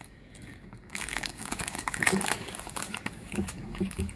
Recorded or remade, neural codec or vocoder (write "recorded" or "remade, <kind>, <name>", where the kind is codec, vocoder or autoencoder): remade, codec, DAC